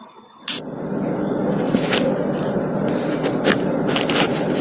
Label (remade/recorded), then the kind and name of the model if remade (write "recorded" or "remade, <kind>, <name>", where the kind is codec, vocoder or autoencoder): recorded